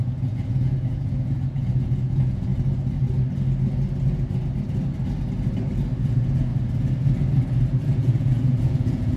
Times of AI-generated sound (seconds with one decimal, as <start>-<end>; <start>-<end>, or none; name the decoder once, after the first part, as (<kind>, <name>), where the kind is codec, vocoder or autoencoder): 0.0-2.5 (vocoder, Vocos); 6.0-6.5; 7.9-9.2